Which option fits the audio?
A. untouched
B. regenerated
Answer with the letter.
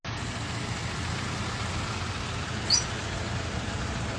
A